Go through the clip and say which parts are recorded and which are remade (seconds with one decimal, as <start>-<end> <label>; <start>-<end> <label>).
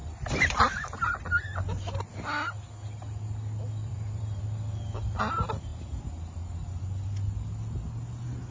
0.0-1.2 remade; 1.2-3.8 recorded; 3.8-4.4 remade; 4.4-8.5 recorded